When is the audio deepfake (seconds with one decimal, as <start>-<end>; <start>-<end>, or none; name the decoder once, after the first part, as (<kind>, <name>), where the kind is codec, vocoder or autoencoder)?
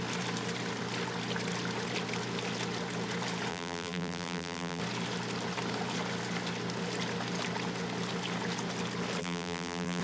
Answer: 3.5-4.8 (vocoder, BigVGAN v2); 9.2-10.0